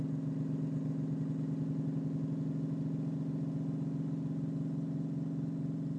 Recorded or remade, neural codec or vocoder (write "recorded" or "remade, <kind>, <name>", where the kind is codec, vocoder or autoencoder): recorded